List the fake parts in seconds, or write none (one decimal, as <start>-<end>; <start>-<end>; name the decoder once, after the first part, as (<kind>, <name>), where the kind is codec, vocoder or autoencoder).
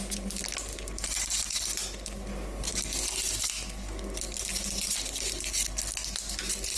none